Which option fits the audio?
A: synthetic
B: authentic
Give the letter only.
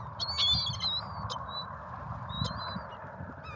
B